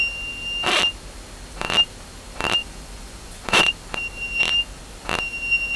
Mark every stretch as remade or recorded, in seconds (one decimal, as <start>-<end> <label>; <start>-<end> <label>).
0.0-2.6 recorded; 2.6-3.7 remade; 3.7-5.8 recorded